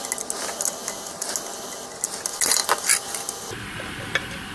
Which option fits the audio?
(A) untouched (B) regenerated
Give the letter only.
A